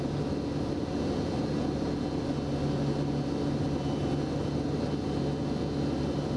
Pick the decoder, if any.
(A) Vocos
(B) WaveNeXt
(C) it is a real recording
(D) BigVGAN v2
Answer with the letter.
C